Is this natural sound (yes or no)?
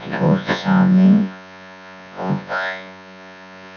no